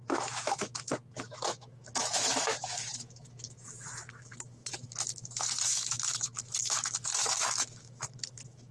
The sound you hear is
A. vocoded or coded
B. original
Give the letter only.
A